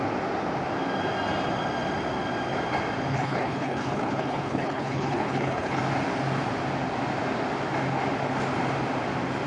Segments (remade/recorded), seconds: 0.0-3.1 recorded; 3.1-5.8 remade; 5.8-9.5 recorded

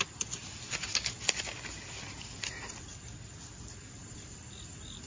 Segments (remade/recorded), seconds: 0.0-4.0 recorded; 4.0-5.1 remade